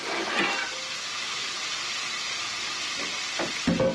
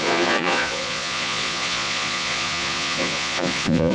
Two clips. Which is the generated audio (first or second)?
second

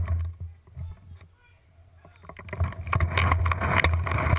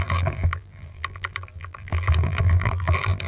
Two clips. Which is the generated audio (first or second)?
second